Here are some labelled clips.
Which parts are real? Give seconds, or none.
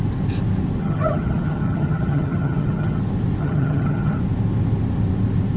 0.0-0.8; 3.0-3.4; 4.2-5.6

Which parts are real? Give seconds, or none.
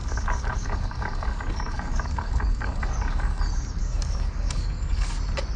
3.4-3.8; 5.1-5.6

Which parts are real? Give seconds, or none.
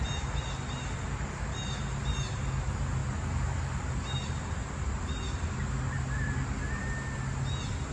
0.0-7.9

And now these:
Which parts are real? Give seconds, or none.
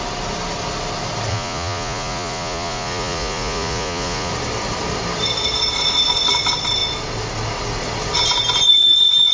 0.0-1.3; 4.3-9.3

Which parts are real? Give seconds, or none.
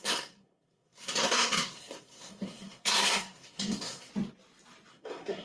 4.1-4.9